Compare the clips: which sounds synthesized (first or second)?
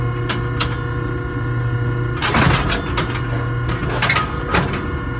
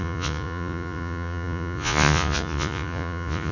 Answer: second